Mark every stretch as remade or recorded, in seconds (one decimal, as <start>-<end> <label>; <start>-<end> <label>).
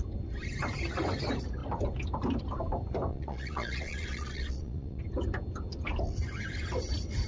0.0-3.1 recorded; 3.1-5.0 remade; 5.0-7.3 recorded